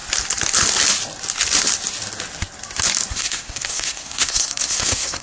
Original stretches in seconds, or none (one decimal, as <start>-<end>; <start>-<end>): 0.0-3.1